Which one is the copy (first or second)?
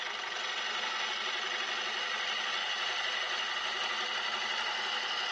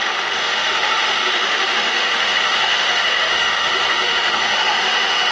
second